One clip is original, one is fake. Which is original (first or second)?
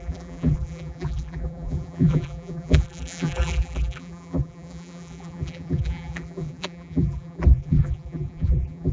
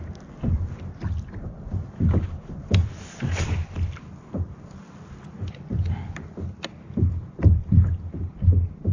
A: second